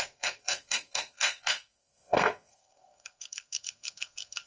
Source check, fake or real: fake